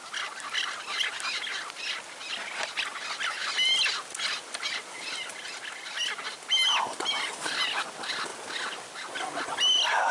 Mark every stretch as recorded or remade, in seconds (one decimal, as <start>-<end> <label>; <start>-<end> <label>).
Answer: 0.0-10.1 recorded